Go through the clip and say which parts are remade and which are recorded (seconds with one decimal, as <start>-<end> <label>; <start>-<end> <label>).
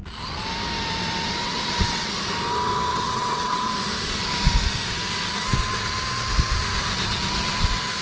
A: 0.0-1.4 recorded; 1.4-2.1 remade; 2.1-2.9 recorded; 2.9-3.7 remade; 3.7-8.0 recorded